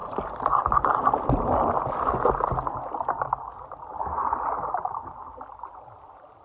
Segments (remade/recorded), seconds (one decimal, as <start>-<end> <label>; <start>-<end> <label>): 0.0-6.4 recorded